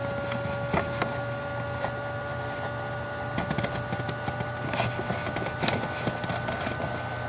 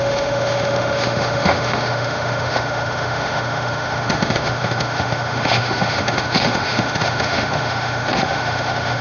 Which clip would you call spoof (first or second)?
second